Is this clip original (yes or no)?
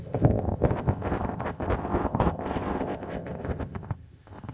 no